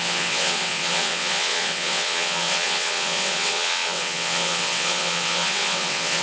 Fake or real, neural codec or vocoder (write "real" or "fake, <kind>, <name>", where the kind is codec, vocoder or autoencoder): fake, vocoder, WaveNeXt